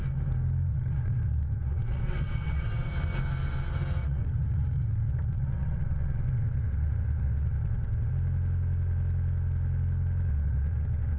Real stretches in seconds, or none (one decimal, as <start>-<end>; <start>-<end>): 0.0-0.7; 2.9-4.0; 8.1-10.3